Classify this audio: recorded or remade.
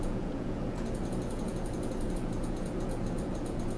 remade